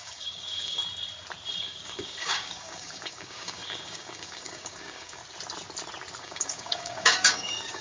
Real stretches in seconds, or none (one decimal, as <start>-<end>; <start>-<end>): 0.8-1.6; 5.2-6.2